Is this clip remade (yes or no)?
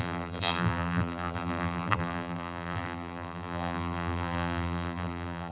yes